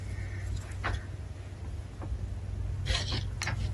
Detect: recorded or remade recorded